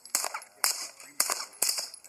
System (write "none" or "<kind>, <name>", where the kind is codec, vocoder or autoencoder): none